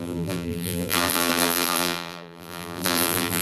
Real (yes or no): no